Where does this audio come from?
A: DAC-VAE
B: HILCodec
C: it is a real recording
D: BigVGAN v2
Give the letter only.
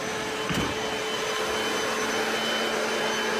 C